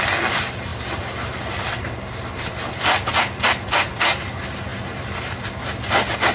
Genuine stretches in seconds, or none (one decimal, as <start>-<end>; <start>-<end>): 0.0-6.3

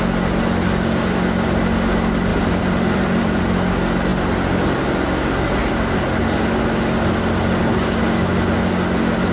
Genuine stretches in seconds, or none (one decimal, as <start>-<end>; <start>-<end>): 0.0-2.3; 3.4-9.3

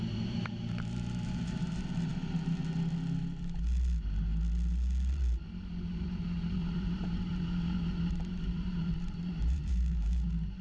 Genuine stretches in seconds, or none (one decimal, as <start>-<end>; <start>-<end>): 2.1-5.9; 7.3-8.1

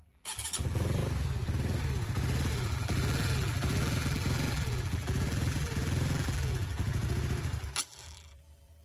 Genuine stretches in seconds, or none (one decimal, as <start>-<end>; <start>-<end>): 1.0-2.5; 7.0-7.6